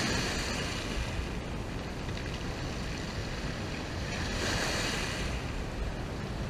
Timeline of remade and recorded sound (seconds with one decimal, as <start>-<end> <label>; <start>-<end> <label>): 0.0-3.2 recorded; 3.2-4.4 remade; 4.4-6.5 recorded